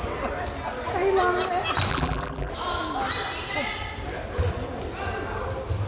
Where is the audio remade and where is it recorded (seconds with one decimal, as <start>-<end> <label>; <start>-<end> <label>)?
0.0-1.9 recorded; 1.9-2.5 remade; 2.5-5.9 recorded